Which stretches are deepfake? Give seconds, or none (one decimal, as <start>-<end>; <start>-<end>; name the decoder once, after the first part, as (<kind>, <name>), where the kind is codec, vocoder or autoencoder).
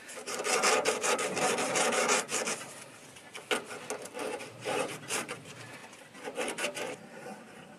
0.0-2.3 (vocoder, BigVGAN v2); 4.4-5.8; 7.2-7.8